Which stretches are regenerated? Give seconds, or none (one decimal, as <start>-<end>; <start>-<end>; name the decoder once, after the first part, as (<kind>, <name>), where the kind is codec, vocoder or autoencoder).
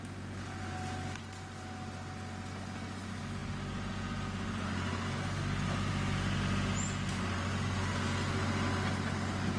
none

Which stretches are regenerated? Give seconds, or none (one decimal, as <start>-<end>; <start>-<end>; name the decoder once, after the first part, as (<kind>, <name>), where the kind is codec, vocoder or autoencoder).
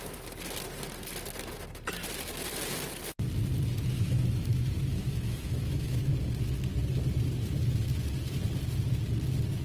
3.9-6.1 (autoencoder, DAC-VAE)